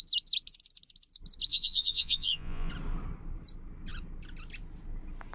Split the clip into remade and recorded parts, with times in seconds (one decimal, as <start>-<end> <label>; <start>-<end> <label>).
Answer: 0.0-1.5 recorded; 1.5-2.7 remade; 2.7-5.3 recorded